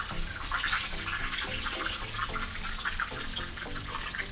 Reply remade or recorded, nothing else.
remade